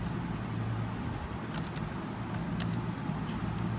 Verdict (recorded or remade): recorded